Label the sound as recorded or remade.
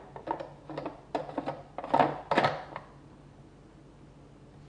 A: recorded